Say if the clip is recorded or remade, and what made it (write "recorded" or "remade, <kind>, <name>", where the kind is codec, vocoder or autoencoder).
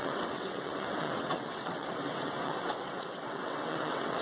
remade, vocoder, WaveNeXt